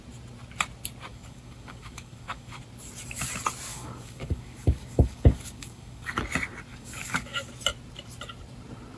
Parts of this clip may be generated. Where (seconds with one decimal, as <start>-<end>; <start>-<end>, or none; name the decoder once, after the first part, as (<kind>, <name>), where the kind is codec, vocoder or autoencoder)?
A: 1.1-2.6 (codec, DAC); 3.7-6.2; 6.7-7.5

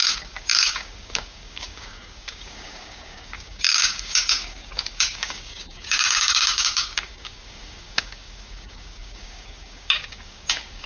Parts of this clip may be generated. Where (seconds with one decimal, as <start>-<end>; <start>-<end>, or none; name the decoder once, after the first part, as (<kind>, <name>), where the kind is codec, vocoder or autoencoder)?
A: 0.0-10.9 (codec, DAC)

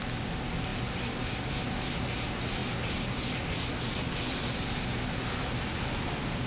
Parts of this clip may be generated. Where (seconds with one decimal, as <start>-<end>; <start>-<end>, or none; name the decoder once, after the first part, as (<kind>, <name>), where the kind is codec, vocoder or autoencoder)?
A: none